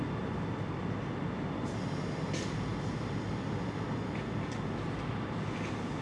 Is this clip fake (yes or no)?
no